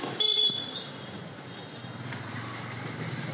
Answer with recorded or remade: recorded